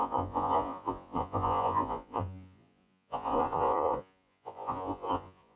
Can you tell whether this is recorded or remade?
remade